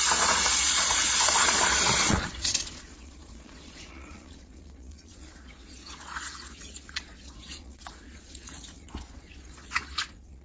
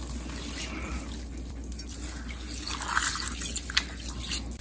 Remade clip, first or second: first